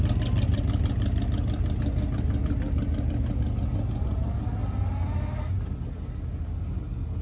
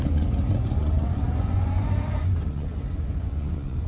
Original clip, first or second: first